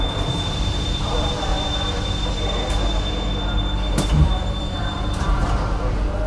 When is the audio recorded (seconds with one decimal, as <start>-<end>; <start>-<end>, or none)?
1.5-4.6; 5.4-6.3